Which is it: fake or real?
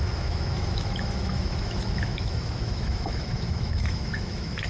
fake